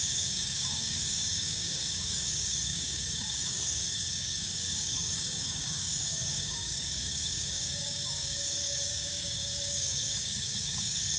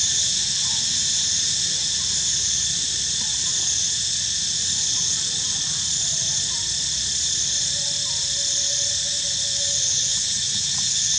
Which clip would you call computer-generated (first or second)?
first